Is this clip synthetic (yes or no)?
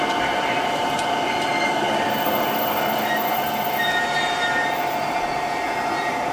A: no